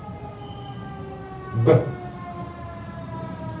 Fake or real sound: real